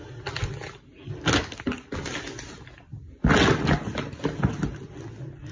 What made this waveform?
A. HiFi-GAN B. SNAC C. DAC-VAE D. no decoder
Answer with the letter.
D